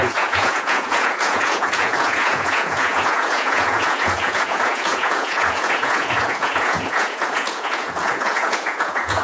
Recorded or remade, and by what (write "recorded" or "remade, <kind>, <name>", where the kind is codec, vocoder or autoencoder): remade, vocoder, Vocos